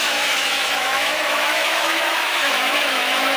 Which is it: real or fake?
fake